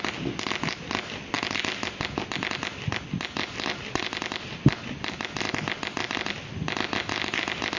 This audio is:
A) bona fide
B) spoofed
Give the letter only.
A